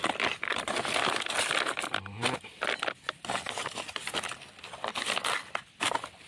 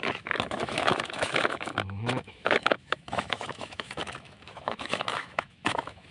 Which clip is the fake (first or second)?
second